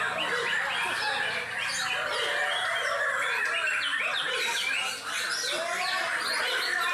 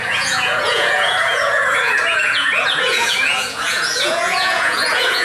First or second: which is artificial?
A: second